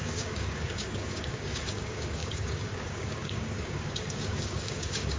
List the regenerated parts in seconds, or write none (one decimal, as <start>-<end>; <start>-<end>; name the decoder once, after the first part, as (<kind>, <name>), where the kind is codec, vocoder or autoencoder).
0.0-5.2 (codec, DAC)